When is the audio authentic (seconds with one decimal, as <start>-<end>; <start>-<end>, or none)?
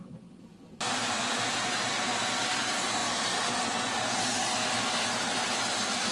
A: 0.0-6.1